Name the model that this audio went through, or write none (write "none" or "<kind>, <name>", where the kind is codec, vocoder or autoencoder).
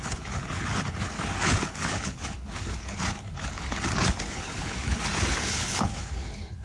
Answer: codec, HILCodec